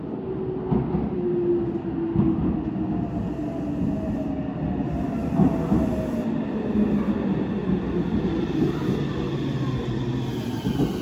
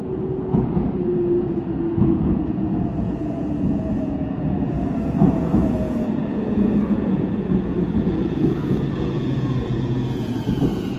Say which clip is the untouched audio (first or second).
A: first